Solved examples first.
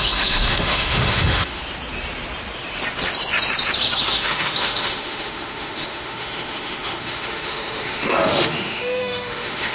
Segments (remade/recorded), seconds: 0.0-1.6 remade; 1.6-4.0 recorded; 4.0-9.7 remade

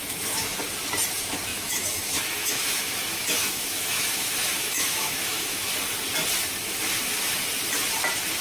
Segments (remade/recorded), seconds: 0.0-0.6 remade; 0.6-1.5 recorded; 1.5-5.7 remade; 5.7-8.4 recorded

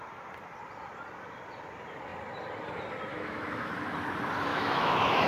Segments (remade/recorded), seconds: 0.0-3.1 recorded; 3.1-3.7 remade; 3.7-4.5 recorded; 4.5-5.3 remade

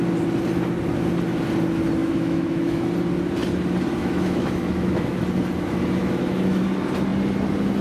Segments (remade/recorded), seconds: 0.0-2.0 recorded; 2.0-2.9 remade; 2.9-4.0 recorded; 4.0-5.2 remade; 5.2-6.0 recorded; 6.0-6.6 remade; 6.6-7.8 recorded

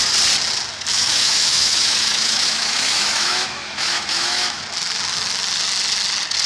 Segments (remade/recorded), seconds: 0.0-0.9 recorded; 0.9-4.6 remade; 4.6-6.5 recorded

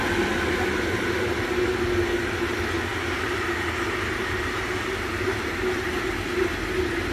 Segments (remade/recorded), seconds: 0.0-7.1 recorded

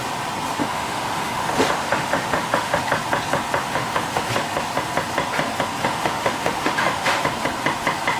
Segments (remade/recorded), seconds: 0.0-0.6 recorded; 0.6-2.8 remade; 2.8-3.6 recorded; 3.6-4.3 remade; 4.3-5.8 recorded; 5.8-7.1 remade; 7.1-8.2 recorded

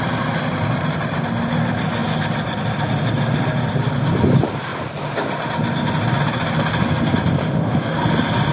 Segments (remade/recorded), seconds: 0.0-7.4 recorded; 7.4-8.0 remade; 8.0-8.5 recorded